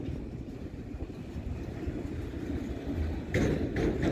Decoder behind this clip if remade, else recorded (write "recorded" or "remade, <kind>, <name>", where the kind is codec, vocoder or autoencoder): recorded